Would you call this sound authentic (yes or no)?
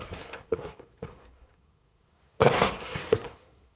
no